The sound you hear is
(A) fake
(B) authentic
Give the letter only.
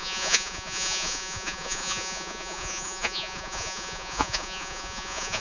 A